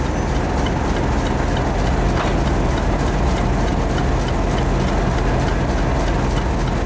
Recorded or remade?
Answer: recorded